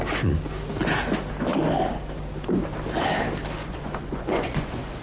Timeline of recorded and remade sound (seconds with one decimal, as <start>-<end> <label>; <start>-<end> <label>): 0.0-3.6 recorded; 3.6-5.0 remade